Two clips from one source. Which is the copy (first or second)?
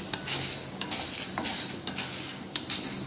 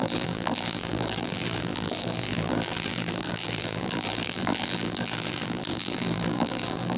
second